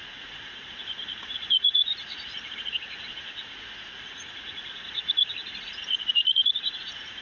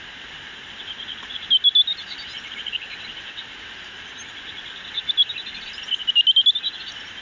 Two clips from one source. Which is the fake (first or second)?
first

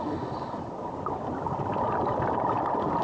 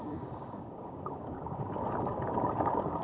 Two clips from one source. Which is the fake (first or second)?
second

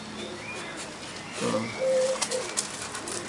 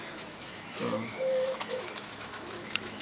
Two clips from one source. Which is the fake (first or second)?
second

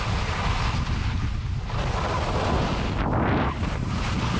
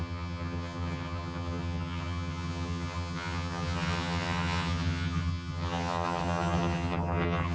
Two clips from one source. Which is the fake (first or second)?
second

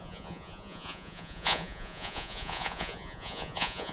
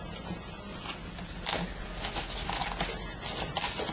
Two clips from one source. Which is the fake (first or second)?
first